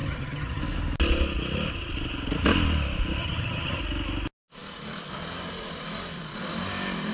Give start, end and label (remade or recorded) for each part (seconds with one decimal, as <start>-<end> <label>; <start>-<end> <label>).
0.0-0.6 remade; 0.6-3.2 recorded; 3.2-3.8 remade; 3.8-7.1 recorded